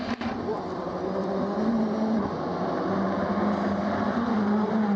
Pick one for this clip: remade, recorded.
recorded